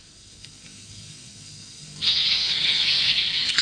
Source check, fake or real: fake